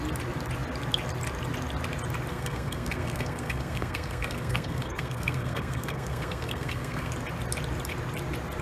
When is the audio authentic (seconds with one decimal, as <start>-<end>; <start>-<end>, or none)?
0.0-2.3; 7.1-8.6